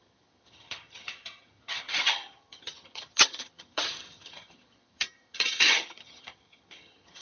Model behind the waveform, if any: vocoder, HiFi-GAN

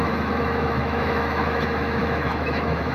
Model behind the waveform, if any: autoencoder, DAC-VAE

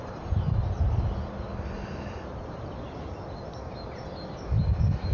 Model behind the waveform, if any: none